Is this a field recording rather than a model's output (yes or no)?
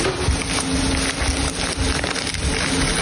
yes